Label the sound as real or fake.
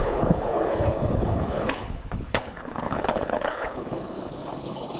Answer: fake